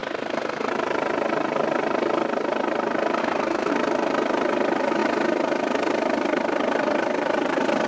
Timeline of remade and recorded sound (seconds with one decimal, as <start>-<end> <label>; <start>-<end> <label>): 0.0-0.7 remade; 0.7-3.2 recorded; 3.2-3.7 remade; 3.7-7.9 recorded